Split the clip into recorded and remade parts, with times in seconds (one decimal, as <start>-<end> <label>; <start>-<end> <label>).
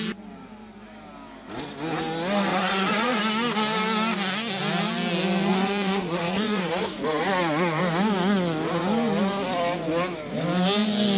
0.0-2.5 recorded; 2.5-3.2 remade; 3.2-5.5 recorded; 5.5-7.8 remade; 7.8-11.2 recorded